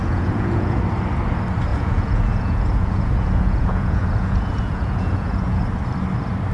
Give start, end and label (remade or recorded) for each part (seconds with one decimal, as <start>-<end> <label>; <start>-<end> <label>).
0.0-0.8 remade; 0.8-1.7 recorded; 1.7-5.6 remade; 5.6-6.5 recorded